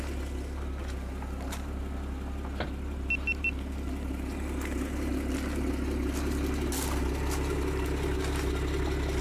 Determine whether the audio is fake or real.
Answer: real